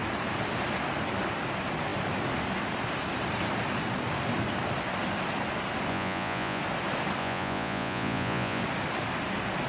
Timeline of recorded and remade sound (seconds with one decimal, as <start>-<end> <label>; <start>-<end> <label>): 0.0-5.9 recorded; 5.9-6.6 remade; 6.6-7.2 recorded; 7.2-8.6 remade; 8.6-9.7 recorded